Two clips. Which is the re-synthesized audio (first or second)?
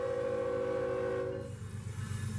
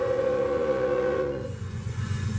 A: second